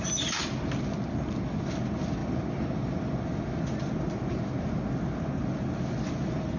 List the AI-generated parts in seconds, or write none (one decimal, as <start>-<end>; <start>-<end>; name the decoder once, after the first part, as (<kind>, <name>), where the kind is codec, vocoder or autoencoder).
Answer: none